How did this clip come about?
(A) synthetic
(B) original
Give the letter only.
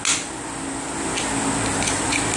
B